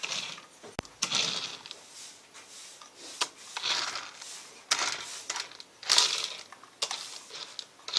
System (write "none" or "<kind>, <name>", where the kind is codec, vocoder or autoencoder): none